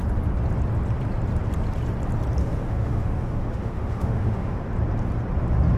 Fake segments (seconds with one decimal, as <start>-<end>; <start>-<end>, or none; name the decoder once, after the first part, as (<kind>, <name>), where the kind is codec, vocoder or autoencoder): 2.4-4.6 (autoencoder, DAC-VAE)